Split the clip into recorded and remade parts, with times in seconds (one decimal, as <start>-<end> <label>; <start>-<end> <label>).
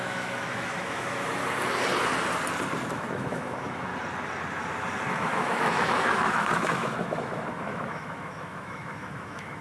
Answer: 0.0-1.4 remade; 1.4-2.9 recorded; 2.9-3.9 remade; 3.9-5.1 recorded; 5.1-9.6 remade